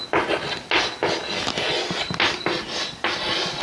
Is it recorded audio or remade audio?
recorded